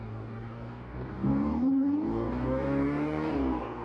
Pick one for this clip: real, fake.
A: fake